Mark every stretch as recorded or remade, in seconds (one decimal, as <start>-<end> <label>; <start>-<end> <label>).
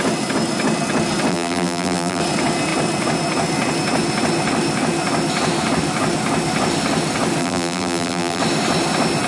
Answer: 0.0-1.3 recorded; 1.3-2.2 remade; 2.2-7.4 recorded; 7.4-8.4 remade; 8.4-9.3 recorded